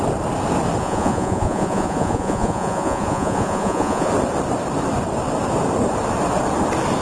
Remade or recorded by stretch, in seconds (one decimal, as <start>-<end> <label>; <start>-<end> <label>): 0.0-0.8 recorded; 0.8-4.1 remade; 4.1-7.0 recorded